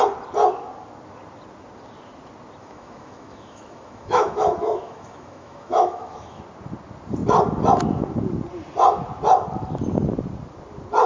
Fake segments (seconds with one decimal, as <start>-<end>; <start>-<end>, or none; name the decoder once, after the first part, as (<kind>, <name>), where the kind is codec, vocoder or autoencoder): 2.6-6.4 (autoencoder, DAC-VAE)